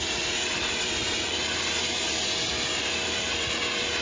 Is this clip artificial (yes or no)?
yes